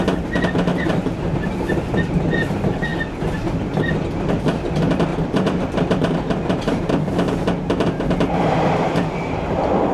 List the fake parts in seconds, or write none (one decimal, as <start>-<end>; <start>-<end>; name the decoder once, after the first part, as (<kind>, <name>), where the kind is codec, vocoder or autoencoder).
0.7-1.4 (vocoder, BigVGAN v2); 5.1-6.9